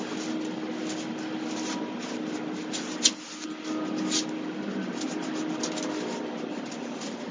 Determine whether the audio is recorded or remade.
recorded